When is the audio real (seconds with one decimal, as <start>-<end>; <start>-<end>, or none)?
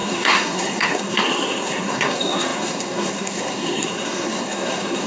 none